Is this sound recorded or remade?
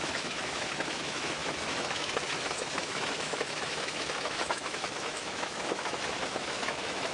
remade